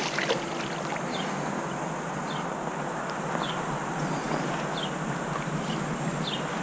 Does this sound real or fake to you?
real